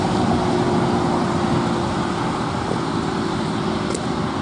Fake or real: real